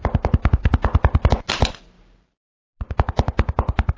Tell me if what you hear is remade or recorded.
recorded